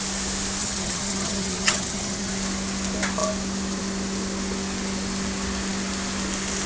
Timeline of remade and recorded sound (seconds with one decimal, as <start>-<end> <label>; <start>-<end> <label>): 0.0-0.6 recorded; 0.6-2.3 remade; 2.3-6.7 recorded